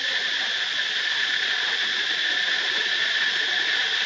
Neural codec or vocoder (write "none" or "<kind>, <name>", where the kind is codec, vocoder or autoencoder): none